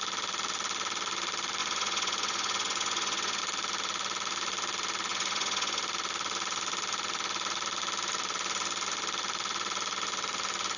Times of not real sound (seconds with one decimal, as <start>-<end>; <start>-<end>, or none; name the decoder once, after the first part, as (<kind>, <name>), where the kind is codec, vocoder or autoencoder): 1.6-3.4 (vocoder, Vocos); 5.1-5.8